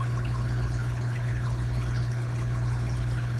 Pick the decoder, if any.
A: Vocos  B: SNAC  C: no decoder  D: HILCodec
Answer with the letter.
D